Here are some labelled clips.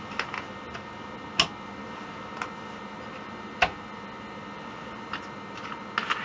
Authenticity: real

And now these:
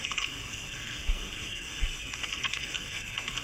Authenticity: fake